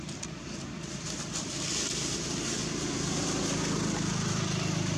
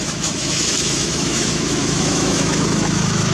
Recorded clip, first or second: first